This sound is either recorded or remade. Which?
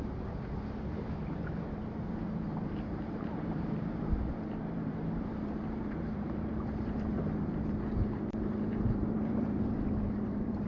remade